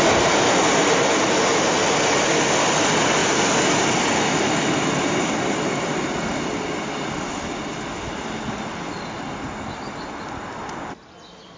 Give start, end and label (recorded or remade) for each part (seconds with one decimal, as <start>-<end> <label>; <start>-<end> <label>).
0.0-11.6 recorded